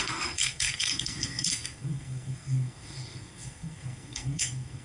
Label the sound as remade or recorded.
remade